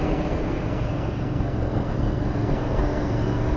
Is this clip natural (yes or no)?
no